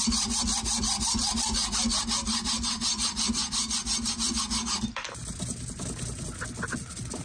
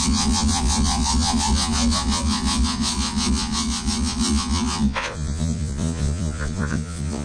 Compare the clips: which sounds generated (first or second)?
second